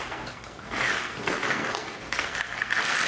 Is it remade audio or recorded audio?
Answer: remade